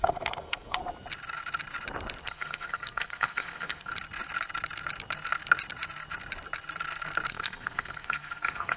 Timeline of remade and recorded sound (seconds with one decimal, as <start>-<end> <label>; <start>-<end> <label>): 0.0-0.8 remade; 0.8-2.2 recorded; 2.2-3.9 remade; 3.9-7.3 recorded; 7.3-8.8 remade